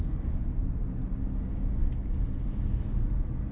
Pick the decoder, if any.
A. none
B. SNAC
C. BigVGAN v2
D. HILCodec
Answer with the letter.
A